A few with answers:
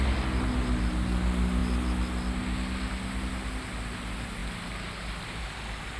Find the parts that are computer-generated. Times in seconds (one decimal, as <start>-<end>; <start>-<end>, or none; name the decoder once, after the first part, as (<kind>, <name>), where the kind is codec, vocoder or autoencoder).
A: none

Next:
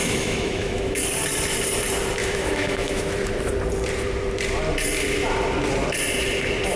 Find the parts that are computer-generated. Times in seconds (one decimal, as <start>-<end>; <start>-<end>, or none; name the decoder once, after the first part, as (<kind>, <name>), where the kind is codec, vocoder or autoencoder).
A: 0.0-1.0 (autoencoder, DAC-VAE); 2.2-3.1

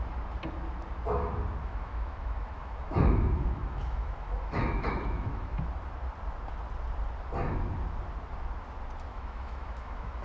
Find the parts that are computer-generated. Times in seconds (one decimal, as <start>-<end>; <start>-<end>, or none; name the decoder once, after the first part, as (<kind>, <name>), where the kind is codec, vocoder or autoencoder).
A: 1.6-5.6 (autoencoder, DAC-VAE); 9.1-10.2

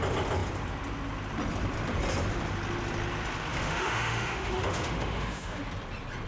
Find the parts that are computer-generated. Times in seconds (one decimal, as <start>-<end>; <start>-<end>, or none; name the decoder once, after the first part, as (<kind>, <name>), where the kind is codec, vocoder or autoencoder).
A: 3.5-5.6 (autoencoder, DAC-VAE)

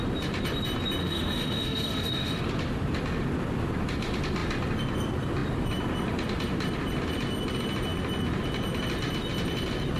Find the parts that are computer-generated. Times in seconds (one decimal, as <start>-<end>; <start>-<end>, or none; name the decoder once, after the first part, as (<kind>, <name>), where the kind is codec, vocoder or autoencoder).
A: 1.0-2.4 (autoencoder, DAC-VAE)

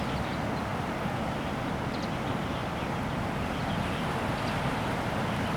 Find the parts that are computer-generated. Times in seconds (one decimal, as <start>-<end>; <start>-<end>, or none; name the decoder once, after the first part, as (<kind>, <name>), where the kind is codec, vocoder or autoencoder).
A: none

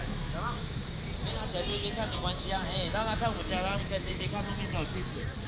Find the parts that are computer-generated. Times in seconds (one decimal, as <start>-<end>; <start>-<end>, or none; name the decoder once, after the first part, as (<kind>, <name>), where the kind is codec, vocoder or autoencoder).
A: 0.0-0.8 (autoencoder, DAC-VAE); 1.7-4.4

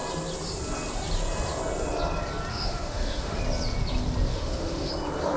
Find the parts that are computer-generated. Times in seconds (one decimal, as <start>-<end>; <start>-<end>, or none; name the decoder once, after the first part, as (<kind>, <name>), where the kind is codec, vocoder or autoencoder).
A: 2.5-3.4 (autoencoder, DAC-VAE); 4.3-4.9